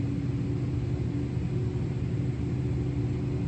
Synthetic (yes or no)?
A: no